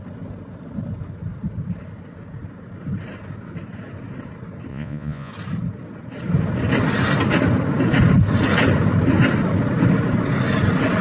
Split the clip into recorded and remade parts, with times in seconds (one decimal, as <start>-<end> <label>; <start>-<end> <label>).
0.0-4.7 recorded; 4.7-5.3 remade; 5.3-11.0 recorded